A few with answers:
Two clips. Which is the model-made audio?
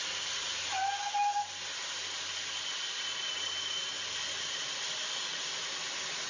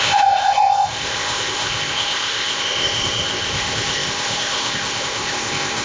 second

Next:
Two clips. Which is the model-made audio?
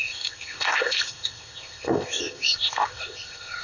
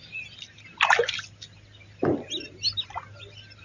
first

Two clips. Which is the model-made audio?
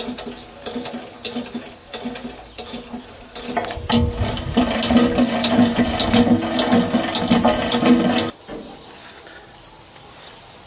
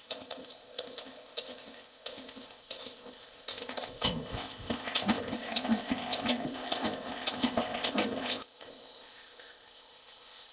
second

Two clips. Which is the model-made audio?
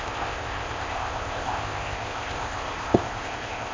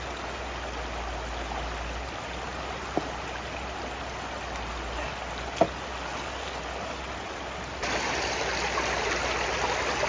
first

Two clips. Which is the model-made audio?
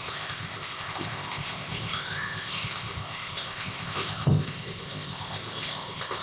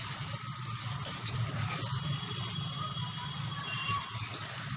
first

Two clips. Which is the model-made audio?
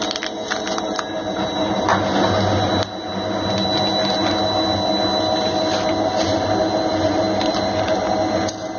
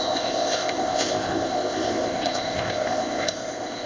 second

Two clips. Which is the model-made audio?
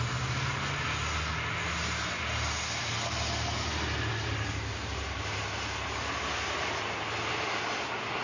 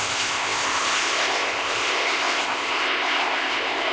second